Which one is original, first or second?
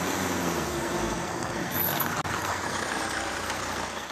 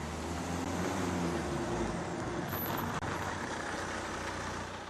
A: second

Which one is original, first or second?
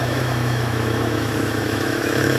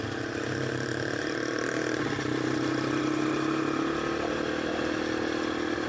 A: second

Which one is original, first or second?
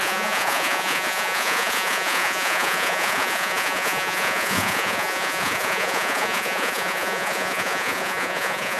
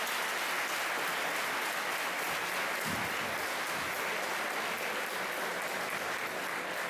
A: second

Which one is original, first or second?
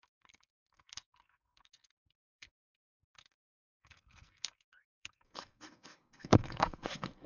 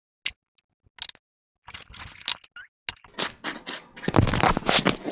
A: second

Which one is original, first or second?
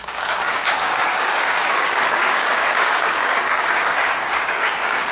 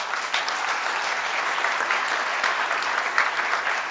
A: second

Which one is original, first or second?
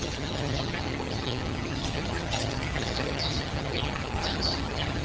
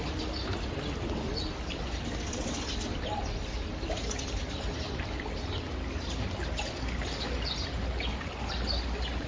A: second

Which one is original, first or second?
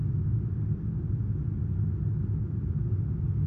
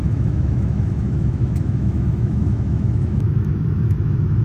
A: first